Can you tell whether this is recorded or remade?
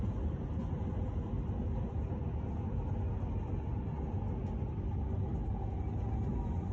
recorded